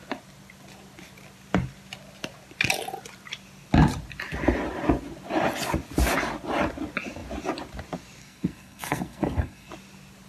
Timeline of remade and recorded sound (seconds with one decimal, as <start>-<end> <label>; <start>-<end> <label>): 0.0-8.2 recorded; 8.2-9.7 remade; 9.7-10.3 recorded